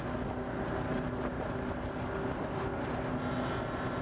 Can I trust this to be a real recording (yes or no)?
yes